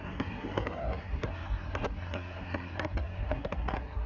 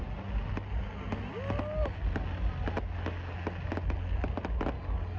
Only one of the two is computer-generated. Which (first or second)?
first